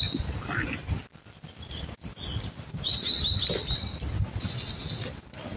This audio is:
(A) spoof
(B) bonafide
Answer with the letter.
B